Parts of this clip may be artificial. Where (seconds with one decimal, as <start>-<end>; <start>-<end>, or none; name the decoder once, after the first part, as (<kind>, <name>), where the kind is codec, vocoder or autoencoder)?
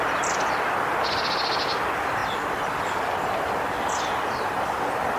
none